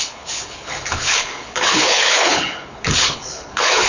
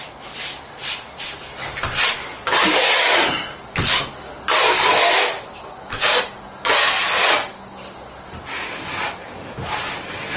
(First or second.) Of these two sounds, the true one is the second